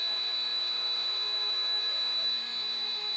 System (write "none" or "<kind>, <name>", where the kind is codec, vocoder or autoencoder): autoencoder, DAC-VAE